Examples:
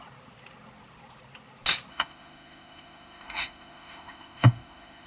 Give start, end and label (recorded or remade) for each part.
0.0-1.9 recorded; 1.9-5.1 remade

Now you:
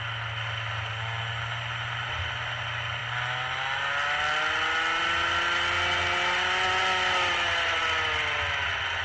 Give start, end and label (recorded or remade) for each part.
0.0-9.0 recorded

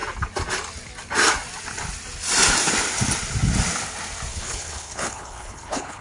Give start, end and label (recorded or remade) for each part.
0.0-4.3 recorded; 4.3-6.0 remade

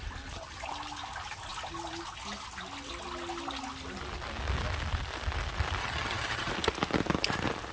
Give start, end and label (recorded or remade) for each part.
0.0-5.8 recorded; 5.8-6.5 remade; 6.5-7.7 recorded

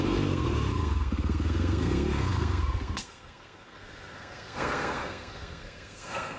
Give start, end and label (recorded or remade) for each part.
0.0-6.4 remade

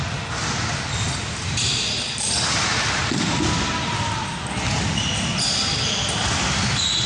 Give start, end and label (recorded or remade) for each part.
0.0-7.1 recorded

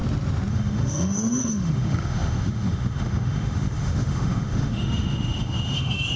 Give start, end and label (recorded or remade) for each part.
0.0-0.5 recorded; 0.5-6.2 remade

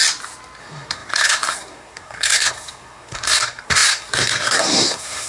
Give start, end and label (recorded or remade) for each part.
0.0-0.6 recorded; 0.6-5.3 remade